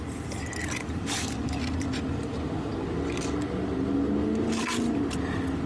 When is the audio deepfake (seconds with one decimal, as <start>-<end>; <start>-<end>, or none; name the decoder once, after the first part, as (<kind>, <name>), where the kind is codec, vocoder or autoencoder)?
0.6-2.2 (vocoder, BigVGAN v2)